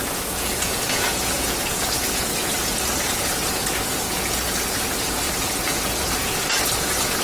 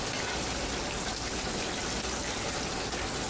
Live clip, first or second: second